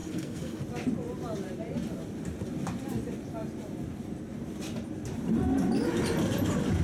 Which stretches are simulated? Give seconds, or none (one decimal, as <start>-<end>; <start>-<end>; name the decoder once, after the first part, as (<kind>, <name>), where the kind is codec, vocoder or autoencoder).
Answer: 0.0-0.6 (codec, SNAC)

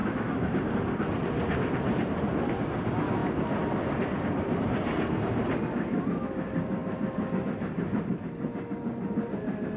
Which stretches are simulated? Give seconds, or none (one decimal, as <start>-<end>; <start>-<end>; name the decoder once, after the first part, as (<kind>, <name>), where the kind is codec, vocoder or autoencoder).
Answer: 0.0-0.7 (autoencoder, DAC-VAE)

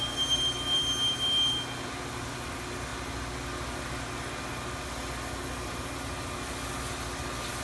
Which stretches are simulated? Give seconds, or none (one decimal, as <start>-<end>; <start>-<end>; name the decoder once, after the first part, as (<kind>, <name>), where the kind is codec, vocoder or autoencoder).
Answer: none

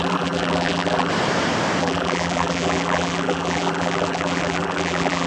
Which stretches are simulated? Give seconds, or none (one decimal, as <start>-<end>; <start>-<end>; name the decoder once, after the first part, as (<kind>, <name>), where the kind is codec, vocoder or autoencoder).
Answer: 0.0-1.1 (vocoder, BigVGAN v2); 1.8-5.3

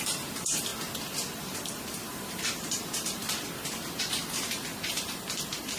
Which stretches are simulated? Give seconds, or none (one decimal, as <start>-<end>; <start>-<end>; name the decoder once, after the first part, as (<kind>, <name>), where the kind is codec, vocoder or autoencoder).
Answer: 0.0-0.7 (vocoder, BigVGAN v2); 1.4-3.2; 4.0-5.8

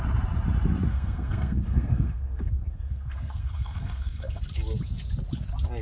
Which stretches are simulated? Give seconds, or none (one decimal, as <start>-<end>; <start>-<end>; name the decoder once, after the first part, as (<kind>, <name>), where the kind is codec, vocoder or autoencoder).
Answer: 0.9-4.4 (codec, SNAC)